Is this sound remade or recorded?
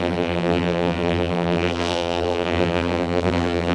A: remade